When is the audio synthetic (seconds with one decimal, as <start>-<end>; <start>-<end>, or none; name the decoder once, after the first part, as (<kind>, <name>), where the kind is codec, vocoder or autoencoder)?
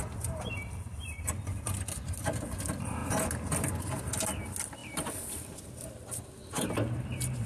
none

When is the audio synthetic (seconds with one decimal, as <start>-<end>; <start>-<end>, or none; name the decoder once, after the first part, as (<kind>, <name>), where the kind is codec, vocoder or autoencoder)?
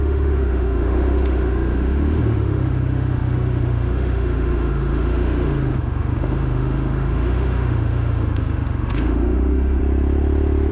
0.0-9.8 (autoencoder, DAC-VAE)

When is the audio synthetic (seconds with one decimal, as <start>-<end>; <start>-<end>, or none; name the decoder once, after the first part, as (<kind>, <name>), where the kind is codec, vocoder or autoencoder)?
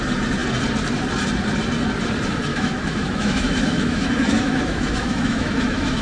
2.5-6.0 (autoencoder, DAC-VAE)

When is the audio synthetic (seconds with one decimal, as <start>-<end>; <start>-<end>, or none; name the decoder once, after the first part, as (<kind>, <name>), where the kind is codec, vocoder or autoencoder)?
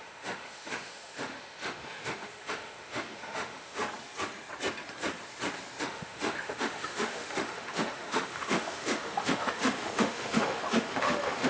0.0-3.8 (autoencoder, DAC-VAE); 5.8-11.5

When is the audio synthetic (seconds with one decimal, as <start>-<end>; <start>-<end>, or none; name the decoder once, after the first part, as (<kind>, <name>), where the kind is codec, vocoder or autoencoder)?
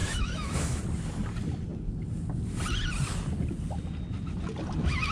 0.0-0.8 (autoencoder, DAC-VAE)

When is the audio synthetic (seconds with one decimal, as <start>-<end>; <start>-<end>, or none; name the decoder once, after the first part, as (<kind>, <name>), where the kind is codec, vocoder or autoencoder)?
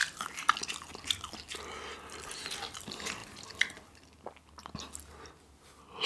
none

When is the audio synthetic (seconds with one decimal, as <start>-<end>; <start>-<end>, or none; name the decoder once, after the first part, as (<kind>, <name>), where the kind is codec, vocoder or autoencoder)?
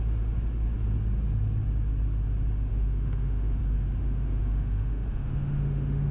2.7-3.6 (autoencoder, DAC-VAE); 4.0-6.1